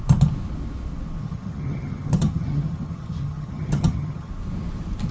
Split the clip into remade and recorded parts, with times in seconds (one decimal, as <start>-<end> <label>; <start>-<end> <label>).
0.0-1.2 recorded; 1.2-4.3 remade; 4.3-5.1 recorded